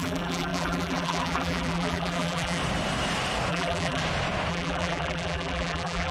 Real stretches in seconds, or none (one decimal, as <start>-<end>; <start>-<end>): 2.6-3.5; 4.0-4.5